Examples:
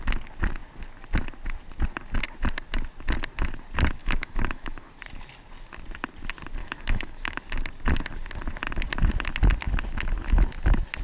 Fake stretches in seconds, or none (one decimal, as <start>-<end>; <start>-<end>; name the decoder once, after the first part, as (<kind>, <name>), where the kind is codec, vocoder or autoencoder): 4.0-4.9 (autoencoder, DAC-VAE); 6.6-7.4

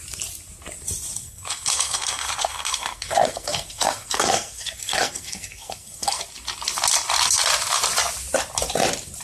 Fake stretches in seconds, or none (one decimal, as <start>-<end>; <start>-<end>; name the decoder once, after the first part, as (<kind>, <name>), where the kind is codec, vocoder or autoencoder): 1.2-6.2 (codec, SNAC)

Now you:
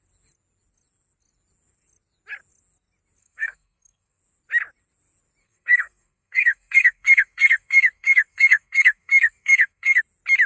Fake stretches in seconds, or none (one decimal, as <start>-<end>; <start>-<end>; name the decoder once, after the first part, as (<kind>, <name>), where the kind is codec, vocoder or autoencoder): 3.2-4.2 (codec, SNAC); 5.4-10.0